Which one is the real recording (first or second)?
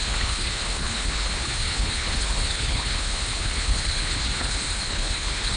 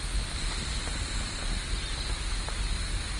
second